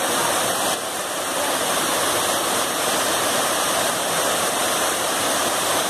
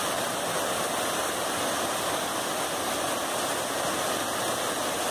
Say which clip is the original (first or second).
second